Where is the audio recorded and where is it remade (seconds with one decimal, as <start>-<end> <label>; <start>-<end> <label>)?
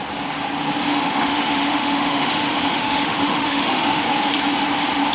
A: 0.0-0.9 recorded; 0.9-4.0 remade; 4.0-5.1 recorded